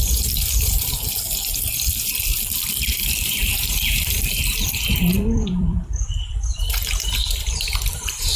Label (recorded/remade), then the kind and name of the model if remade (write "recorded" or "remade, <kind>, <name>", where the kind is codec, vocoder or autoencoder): remade, vocoder, BigVGAN v2